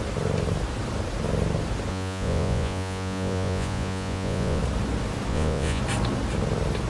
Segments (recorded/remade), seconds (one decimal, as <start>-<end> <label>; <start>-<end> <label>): 0.0-1.9 recorded; 1.9-4.6 remade; 4.6-5.3 recorded; 5.3-5.8 remade; 5.8-6.9 recorded